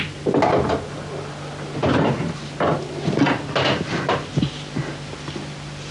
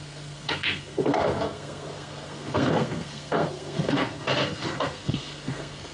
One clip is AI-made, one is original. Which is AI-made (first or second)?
second